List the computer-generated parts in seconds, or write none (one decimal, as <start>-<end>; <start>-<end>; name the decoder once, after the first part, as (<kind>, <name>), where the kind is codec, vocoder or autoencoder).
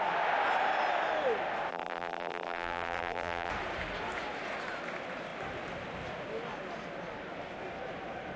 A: 1.7-3.5 (vocoder, BigVGAN v2)